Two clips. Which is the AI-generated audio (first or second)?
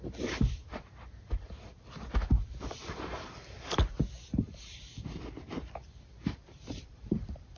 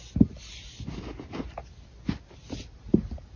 first